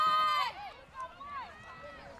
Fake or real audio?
real